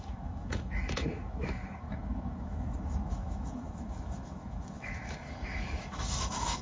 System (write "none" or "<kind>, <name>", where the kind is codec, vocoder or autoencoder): autoencoder, DAC-VAE